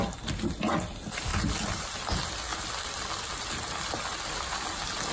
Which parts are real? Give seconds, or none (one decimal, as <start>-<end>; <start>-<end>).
0.0-5.1